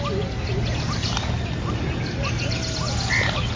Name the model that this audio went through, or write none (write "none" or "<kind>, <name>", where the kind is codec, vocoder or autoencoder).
none